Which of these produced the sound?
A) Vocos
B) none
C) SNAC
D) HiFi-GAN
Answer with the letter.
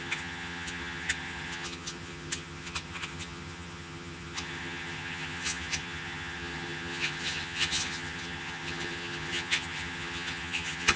D